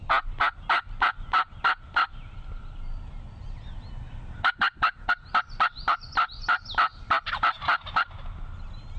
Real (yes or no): yes